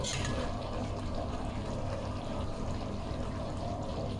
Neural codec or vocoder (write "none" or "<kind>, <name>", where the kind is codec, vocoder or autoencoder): none